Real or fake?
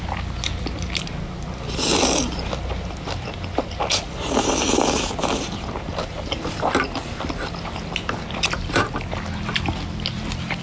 real